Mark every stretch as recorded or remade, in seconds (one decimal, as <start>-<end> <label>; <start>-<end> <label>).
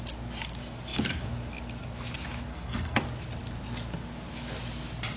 0.0-2.5 recorded; 2.5-3.0 remade; 3.0-5.2 recorded